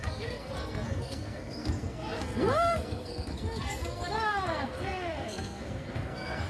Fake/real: fake